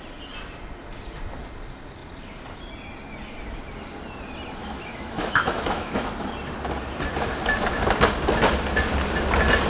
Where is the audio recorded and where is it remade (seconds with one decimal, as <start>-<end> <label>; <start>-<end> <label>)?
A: 0.0-4.6 recorded; 4.6-6.1 remade; 6.1-9.7 recorded